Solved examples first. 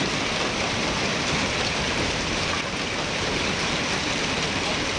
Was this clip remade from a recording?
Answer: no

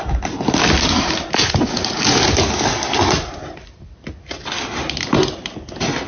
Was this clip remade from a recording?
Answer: no